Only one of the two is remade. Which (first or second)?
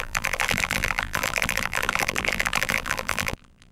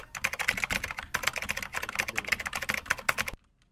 first